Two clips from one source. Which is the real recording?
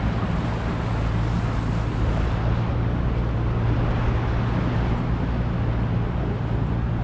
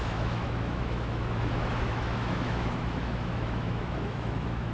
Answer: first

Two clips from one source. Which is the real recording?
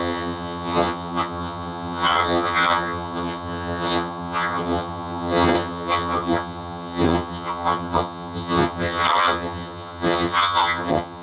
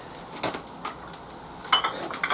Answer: second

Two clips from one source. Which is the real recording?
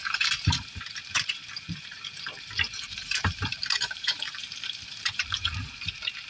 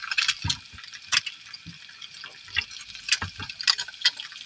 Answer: second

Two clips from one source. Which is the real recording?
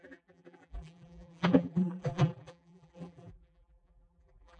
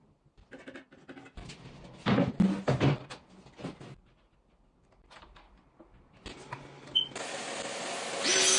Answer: second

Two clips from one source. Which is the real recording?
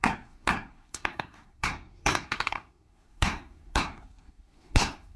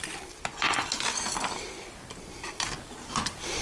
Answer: second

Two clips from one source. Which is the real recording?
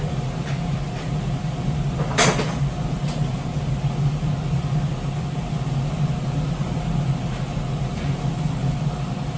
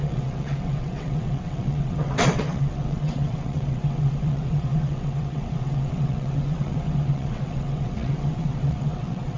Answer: first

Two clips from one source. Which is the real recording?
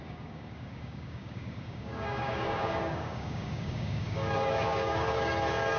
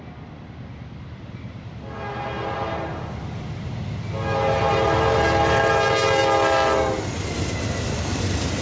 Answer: second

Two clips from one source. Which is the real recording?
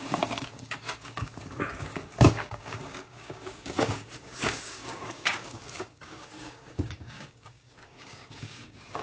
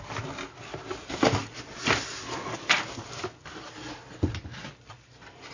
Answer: second